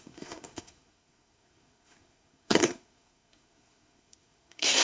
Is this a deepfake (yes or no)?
yes